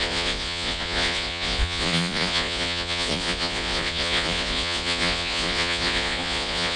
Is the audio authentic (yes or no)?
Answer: no